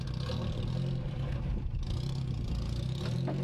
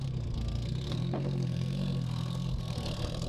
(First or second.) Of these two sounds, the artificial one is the second